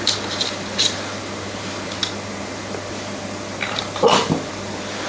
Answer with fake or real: real